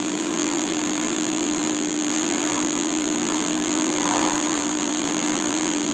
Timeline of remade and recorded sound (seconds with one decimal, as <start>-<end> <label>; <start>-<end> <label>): 0.0-5.9 remade